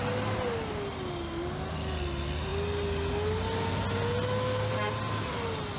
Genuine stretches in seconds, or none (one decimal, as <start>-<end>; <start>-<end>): 0.0-5.8